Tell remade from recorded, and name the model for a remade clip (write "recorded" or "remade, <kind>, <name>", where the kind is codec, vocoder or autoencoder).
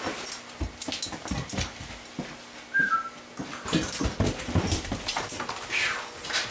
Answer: recorded